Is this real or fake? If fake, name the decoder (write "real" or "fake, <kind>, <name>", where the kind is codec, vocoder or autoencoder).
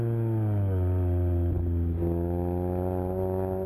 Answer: real